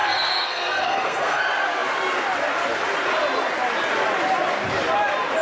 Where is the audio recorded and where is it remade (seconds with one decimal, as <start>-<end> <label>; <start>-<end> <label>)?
0.0-1.4 remade; 1.4-5.4 recorded